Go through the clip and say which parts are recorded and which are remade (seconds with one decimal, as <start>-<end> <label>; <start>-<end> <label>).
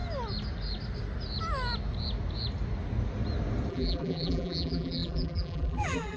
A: 0.0-3.7 recorded; 3.7-6.2 remade